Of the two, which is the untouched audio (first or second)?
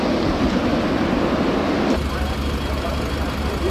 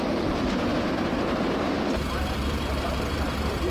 first